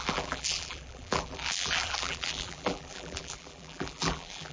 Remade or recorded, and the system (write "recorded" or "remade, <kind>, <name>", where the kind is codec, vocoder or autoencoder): remade, vocoder, BigVGAN v2